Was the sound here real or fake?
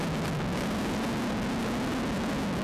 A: real